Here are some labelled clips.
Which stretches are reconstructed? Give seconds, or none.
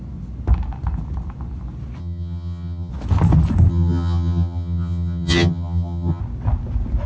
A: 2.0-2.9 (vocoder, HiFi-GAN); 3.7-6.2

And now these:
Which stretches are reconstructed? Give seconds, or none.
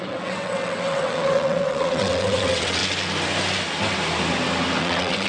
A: 0.0-2.8 (vocoder, WaveNeXt); 4.8-5.3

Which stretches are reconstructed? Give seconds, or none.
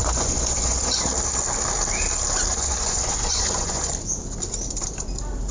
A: 0.0-1.0 (vocoder, Vocos); 2.5-3.9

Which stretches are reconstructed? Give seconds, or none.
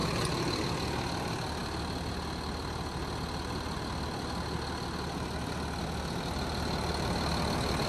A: none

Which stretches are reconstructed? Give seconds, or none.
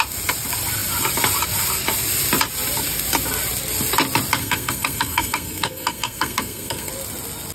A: 4.4-6.9 (codec, SNAC)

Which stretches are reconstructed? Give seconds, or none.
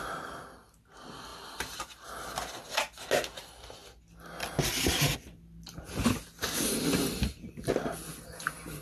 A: none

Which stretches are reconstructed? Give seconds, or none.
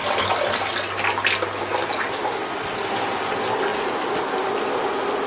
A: none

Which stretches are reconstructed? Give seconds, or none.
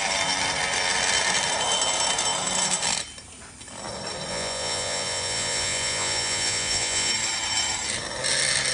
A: 4.3-7.1 (vocoder, Vocos)